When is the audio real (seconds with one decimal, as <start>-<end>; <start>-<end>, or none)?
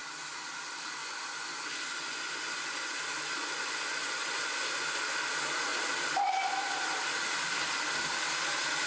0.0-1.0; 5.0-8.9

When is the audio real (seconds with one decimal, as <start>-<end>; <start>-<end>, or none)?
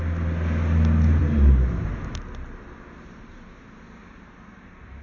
0.0-5.0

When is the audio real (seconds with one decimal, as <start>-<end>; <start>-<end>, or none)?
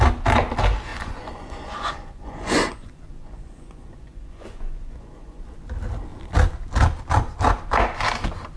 0.0-0.9; 5.4-8.6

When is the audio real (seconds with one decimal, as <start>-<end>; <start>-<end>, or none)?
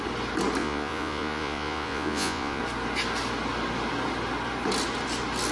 0.0-0.6; 2.6-5.5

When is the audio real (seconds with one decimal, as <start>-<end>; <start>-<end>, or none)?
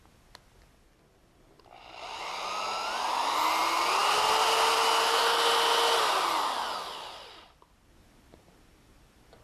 0.0-9.4